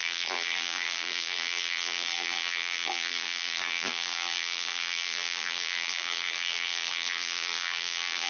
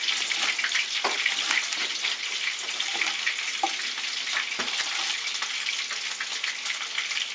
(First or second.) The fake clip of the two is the first